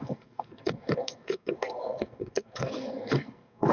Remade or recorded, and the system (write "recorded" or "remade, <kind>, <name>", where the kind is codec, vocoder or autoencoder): remade, codec, SNAC